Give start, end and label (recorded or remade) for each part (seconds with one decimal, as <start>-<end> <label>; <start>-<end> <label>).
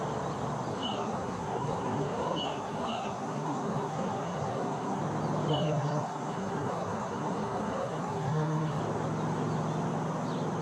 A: 0.0-0.7 recorded; 0.7-5.0 remade; 5.0-5.5 recorded; 5.5-8.8 remade; 8.8-10.6 recorded